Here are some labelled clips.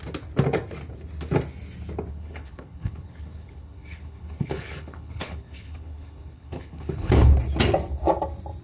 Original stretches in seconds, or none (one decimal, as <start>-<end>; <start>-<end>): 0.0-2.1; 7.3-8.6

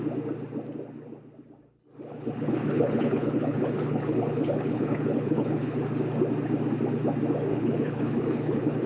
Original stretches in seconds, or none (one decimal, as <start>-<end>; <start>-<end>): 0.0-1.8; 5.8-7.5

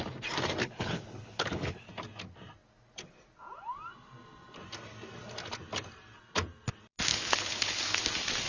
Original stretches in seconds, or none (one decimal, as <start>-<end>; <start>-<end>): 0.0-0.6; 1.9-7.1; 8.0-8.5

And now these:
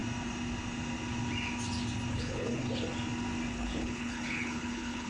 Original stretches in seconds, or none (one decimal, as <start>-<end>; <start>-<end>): 0.0-2.1; 2.6-3.5